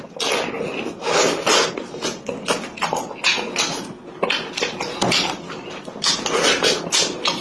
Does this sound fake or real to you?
real